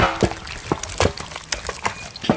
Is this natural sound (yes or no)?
yes